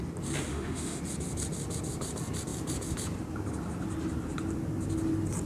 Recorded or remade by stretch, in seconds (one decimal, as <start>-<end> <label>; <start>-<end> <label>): 0.0-0.5 recorded; 0.5-1.0 remade; 1.0-5.5 recorded

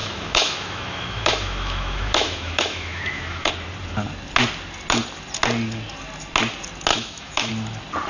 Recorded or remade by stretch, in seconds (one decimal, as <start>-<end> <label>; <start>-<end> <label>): 0.0-3.5 remade; 3.5-6.9 recorded; 6.9-7.5 remade; 7.5-8.1 recorded

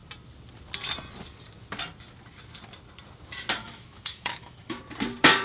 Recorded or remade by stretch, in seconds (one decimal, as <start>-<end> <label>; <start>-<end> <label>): 0.0-3.6 recorded; 3.6-4.8 remade; 4.8-5.4 recorded

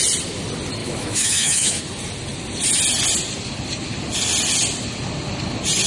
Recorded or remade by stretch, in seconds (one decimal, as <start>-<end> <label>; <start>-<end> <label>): 0.0-0.8 recorded; 0.8-1.8 remade; 1.8-5.9 recorded